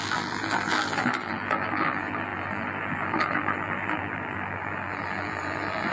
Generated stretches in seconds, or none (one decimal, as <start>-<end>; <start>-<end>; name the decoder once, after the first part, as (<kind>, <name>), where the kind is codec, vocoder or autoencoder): 0.0-5.9 (vocoder, BigVGAN v2)